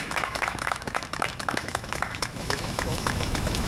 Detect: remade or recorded remade